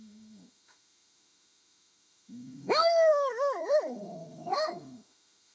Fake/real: fake